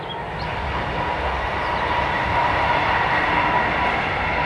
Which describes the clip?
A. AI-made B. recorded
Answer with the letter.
B